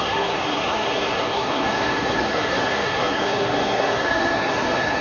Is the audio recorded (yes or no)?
no